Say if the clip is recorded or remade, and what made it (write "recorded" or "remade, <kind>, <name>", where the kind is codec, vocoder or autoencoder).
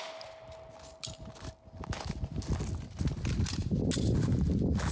recorded